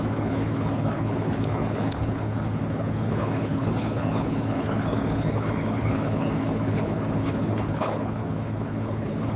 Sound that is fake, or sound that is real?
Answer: fake